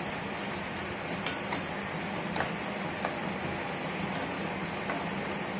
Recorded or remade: remade